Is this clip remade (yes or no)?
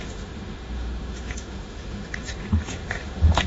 yes